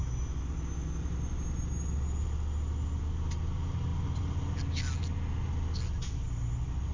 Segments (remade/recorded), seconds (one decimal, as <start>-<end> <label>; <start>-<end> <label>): 0.0-6.9 recorded